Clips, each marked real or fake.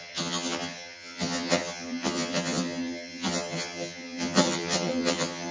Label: fake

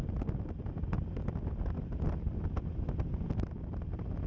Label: real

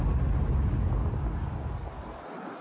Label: real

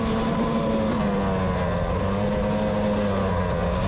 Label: real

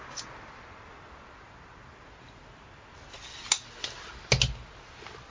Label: real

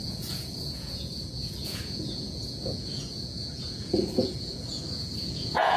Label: fake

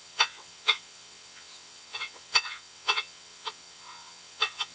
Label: fake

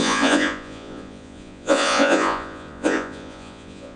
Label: fake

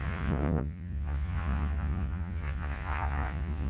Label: fake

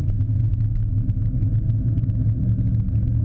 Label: real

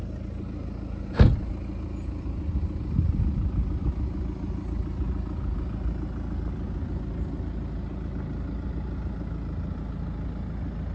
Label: real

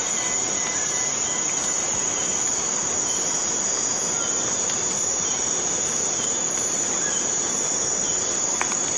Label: real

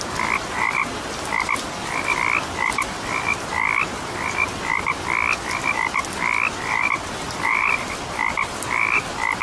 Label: real